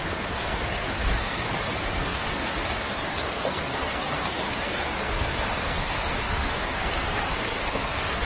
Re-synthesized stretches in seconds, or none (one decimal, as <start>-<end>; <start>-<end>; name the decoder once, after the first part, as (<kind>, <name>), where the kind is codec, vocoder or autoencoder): 0.0-8.3 (codec, SNAC)